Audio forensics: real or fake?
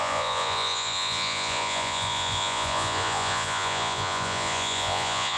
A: fake